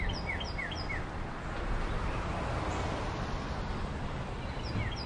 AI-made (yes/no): no